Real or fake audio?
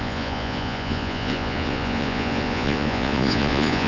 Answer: fake